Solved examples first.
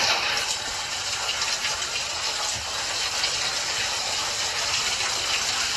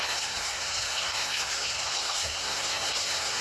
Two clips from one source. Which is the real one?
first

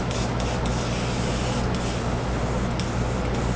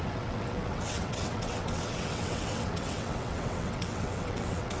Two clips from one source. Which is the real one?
first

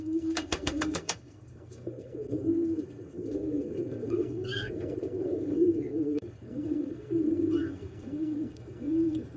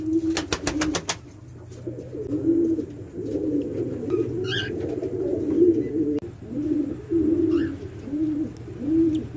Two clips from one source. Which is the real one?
second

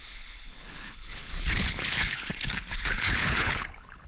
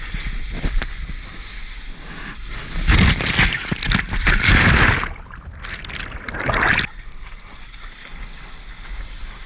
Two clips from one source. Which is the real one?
second